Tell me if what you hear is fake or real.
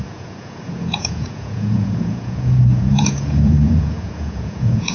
fake